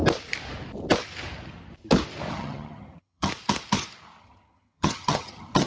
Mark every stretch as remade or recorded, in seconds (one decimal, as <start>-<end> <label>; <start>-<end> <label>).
0.0-2.3 recorded; 2.3-3.3 remade; 3.3-4.2 recorded; 4.2-5.7 remade